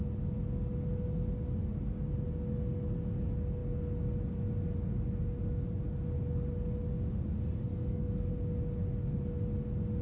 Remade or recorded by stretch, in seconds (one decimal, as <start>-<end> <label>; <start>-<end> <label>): 0.0-7.7 recorded; 7.7-8.3 remade; 8.3-10.0 recorded